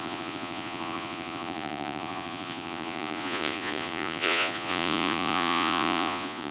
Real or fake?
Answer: fake